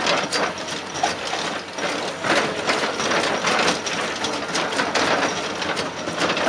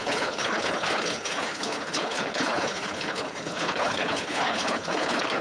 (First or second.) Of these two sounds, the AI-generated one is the second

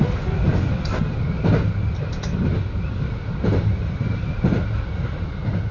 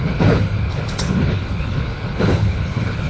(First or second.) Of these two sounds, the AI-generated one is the second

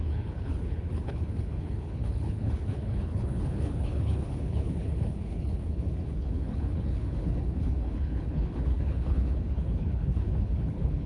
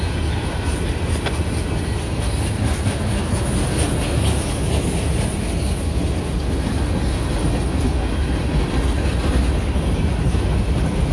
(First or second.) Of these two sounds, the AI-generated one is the first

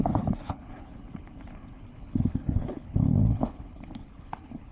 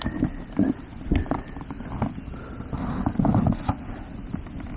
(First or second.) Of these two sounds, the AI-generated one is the first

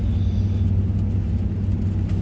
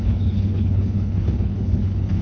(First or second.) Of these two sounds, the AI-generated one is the second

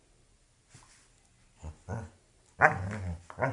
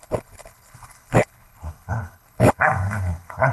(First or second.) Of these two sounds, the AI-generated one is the second